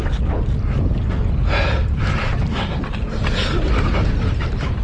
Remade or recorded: recorded